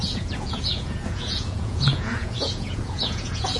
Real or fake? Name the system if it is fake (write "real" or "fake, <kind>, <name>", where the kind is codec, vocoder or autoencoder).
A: fake, vocoder, Vocos